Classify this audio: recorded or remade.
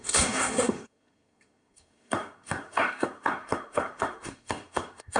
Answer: remade